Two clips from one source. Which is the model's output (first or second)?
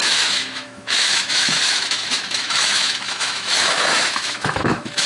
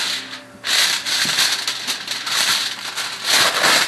first